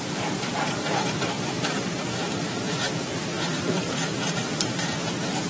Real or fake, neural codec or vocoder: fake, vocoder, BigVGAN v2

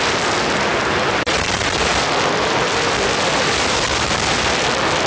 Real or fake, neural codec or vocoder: fake, vocoder, BigVGAN v2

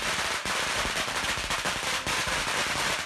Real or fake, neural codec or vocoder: real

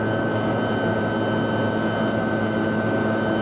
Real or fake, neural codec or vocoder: real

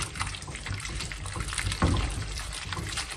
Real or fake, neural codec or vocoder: fake, vocoder, BigVGAN v2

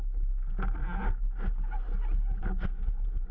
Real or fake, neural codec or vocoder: real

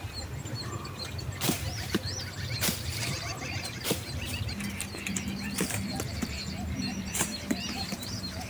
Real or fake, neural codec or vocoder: fake, vocoder, BigVGAN v2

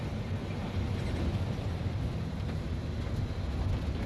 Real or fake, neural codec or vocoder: real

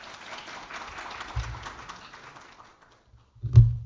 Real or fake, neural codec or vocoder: real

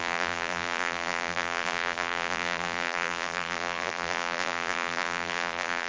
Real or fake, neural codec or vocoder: fake, vocoder, BigVGAN v2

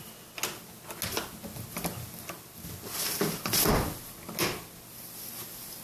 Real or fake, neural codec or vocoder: real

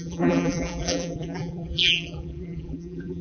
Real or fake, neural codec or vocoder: fake, vocoder, BigVGAN v2